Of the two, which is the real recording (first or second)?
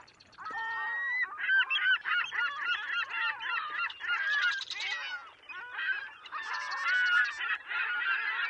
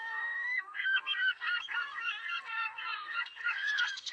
first